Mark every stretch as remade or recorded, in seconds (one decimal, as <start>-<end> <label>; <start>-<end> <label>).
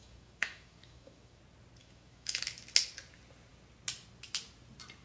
0.0-1.4 remade; 1.4-1.8 recorded; 1.8-2.4 remade; 2.4-5.0 recorded